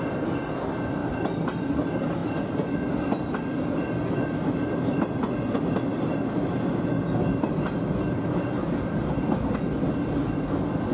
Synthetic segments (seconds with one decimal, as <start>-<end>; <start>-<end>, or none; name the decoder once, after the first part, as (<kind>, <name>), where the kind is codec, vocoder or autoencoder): none